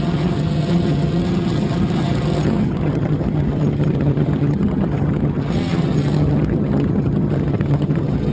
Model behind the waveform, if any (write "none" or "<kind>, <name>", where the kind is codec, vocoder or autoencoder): vocoder, HiFi-GAN